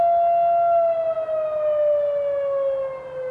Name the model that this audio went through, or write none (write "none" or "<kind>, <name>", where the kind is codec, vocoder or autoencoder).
none